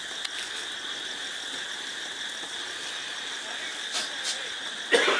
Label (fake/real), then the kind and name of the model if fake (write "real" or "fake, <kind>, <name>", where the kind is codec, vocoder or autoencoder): real